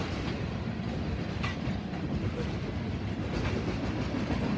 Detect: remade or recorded recorded